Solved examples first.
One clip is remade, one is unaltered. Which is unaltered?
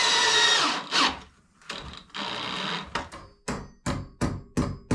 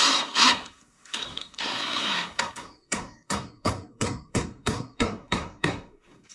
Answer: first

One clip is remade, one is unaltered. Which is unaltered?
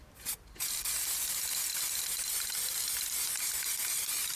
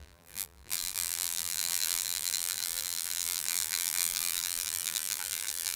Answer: first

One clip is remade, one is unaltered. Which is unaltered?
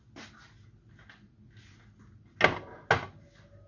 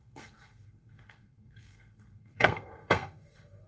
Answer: first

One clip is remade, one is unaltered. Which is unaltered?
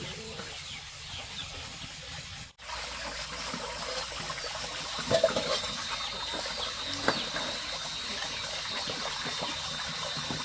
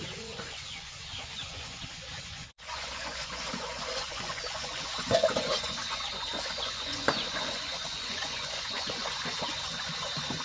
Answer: first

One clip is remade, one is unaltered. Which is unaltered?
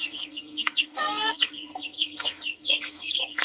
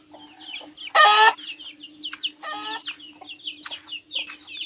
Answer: second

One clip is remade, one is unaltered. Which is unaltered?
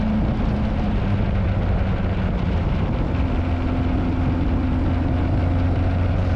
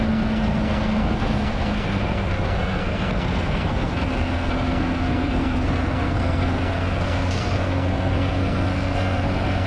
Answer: first